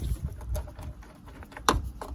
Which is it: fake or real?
real